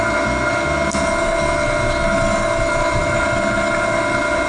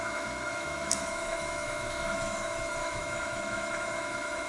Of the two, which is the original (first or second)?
first